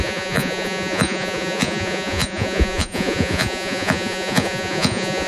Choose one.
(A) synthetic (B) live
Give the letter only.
A